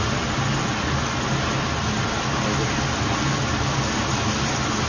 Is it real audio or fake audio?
real